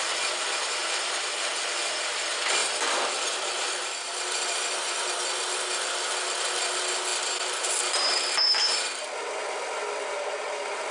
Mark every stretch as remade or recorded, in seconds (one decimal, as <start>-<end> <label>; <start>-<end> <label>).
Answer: 0.0-2.6 recorded; 2.6-5.0 remade; 5.0-10.9 recorded